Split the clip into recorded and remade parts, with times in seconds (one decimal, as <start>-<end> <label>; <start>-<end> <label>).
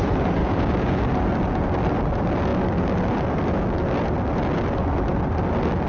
0.0-0.4 recorded; 0.4-1.0 remade; 1.0-5.9 recorded